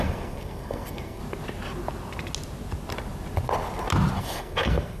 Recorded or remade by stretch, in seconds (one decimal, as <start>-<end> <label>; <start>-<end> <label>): 0.0-1.2 remade; 1.2-4.2 recorded; 4.2-5.0 remade